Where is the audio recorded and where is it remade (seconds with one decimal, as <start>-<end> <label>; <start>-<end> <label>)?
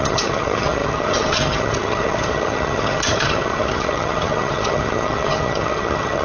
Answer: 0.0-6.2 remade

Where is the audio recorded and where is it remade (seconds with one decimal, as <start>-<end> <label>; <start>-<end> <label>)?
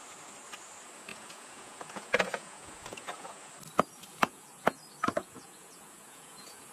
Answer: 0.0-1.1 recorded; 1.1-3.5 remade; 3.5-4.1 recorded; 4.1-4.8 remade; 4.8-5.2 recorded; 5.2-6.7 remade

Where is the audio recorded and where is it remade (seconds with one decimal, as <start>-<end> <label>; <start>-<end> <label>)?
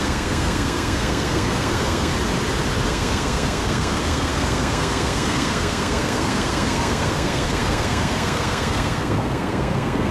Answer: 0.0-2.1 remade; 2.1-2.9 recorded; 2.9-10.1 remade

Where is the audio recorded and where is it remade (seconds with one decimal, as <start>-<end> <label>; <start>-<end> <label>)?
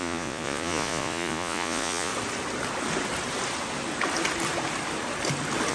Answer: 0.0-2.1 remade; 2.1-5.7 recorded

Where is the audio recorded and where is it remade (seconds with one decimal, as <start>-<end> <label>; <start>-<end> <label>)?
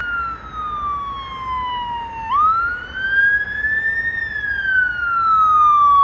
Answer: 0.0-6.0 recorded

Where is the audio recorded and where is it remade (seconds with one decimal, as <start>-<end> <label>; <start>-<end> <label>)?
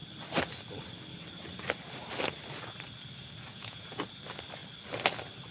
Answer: 0.0-3.5 recorded; 3.5-4.0 remade; 4.0-5.5 recorded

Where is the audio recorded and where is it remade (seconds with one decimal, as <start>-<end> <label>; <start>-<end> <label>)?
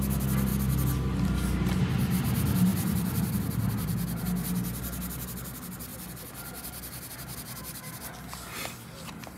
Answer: 0.0-2.7 recorded; 2.7-3.4 remade; 3.4-9.4 recorded